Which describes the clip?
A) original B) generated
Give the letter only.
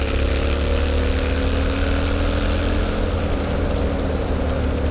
A